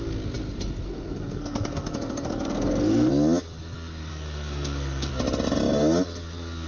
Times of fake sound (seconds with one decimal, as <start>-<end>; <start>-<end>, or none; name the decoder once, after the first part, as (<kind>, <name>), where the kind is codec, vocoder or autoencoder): 0.8-3.1 (codec, SNAC); 4.1-5.1